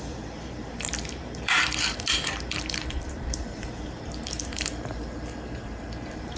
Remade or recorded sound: remade